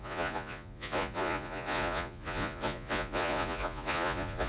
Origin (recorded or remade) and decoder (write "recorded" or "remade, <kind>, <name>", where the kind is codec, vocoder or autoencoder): remade, vocoder, Vocos